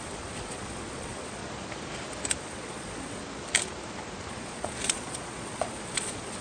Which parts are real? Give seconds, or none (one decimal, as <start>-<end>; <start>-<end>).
1.4-2.4; 3.2-4.3